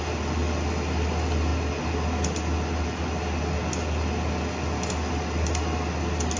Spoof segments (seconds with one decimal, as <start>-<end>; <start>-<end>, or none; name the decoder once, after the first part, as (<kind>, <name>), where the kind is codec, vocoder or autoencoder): none